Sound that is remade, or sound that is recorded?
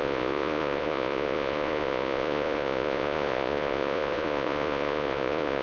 remade